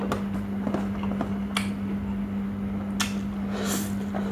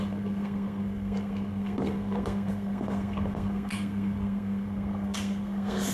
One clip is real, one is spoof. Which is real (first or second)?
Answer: first